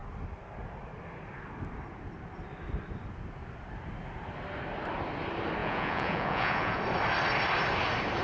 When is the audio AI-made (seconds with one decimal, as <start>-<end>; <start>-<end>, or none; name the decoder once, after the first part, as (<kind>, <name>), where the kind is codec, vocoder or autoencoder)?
5.6-6.8 (vocoder, Vocos)